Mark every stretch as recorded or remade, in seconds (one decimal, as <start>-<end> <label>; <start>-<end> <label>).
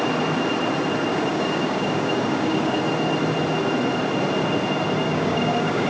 0.0-1.1 recorded; 1.1-2.8 remade; 2.8-5.0 recorded; 5.0-5.9 remade